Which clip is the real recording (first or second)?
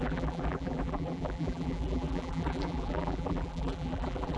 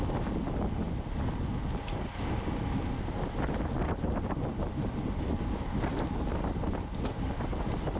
second